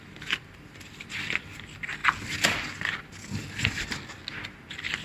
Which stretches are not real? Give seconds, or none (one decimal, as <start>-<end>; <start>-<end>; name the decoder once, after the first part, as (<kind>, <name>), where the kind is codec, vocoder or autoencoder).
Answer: none